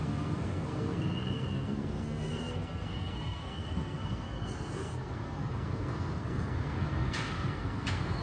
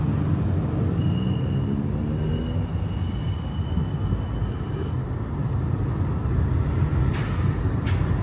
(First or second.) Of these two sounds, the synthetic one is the first